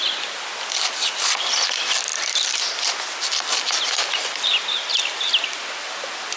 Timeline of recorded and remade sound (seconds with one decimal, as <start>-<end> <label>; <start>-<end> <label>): 0.0-2.1 recorded; 2.1-4.0 remade; 4.0-6.4 recorded